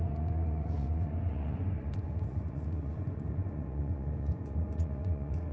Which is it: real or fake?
fake